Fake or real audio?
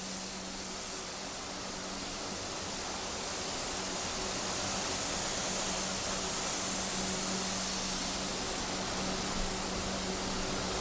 real